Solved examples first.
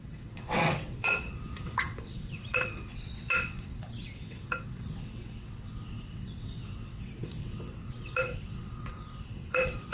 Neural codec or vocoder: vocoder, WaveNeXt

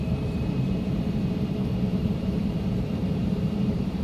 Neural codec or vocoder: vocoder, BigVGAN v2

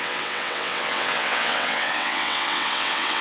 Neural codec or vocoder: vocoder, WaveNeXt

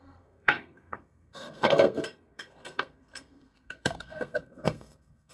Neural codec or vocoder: codec, SNAC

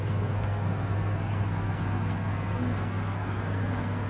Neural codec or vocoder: codec, SNAC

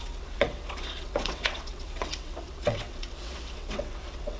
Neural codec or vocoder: vocoder, WaveNeXt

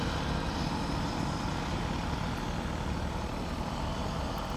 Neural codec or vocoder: none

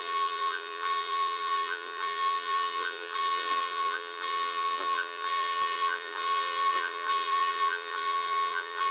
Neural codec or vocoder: vocoder, BigVGAN v2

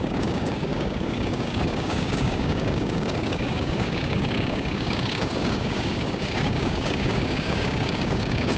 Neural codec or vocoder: codec, DAC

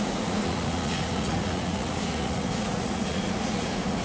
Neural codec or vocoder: vocoder, Vocos